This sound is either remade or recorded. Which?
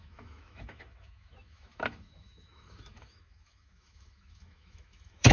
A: remade